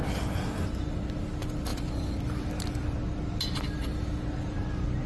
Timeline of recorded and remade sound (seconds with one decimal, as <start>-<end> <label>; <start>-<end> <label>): 0.0-5.1 recorded